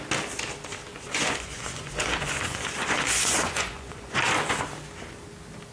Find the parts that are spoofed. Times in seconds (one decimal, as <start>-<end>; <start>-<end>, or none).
0.9-4.3